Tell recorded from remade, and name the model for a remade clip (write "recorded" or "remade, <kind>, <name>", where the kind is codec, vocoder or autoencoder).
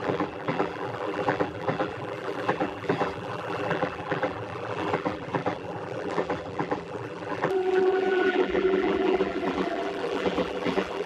remade, vocoder, BigVGAN v2